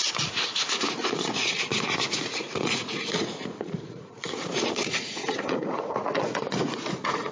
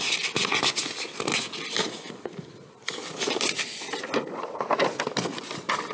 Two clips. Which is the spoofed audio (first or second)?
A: first